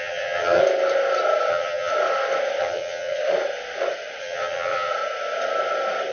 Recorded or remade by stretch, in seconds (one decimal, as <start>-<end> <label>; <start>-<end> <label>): 0.0-0.6 remade; 0.6-1.5 recorded; 1.5-1.9 remade; 1.9-2.6 recorded; 2.6-3.2 remade; 3.2-4.2 recorded; 4.2-4.9 remade; 4.9-6.1 recorded